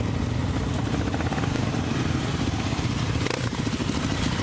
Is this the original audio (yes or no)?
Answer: yes